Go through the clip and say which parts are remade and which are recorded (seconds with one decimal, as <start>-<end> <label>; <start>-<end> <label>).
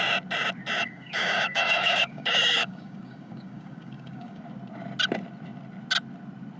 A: 0.0-0.8 recorded; 0.8-4.4 remade; 4.4-6.6 recorded